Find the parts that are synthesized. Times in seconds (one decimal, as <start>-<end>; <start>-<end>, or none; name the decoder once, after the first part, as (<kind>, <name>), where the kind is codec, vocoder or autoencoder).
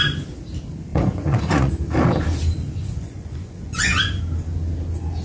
0.9-1.7 (vocoder, Vocos); 2.8-4.2